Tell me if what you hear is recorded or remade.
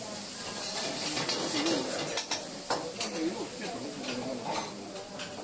recorded